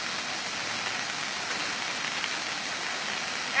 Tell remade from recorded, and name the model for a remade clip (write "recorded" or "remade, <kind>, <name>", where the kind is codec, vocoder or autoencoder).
recorded